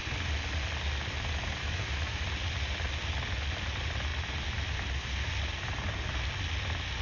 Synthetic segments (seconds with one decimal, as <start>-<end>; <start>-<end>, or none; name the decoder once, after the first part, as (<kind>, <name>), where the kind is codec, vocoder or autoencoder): 1.6-2.2 (autoencoder, DAC-VAE)